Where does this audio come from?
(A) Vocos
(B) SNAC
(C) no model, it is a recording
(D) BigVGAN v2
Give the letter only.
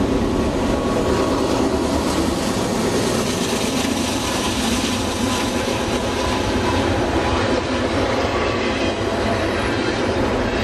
D